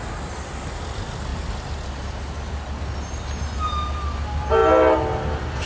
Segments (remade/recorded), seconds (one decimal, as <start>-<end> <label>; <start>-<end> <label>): 0.0-5.7 recorded